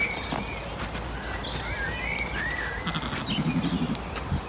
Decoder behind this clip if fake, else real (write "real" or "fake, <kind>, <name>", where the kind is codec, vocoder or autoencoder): real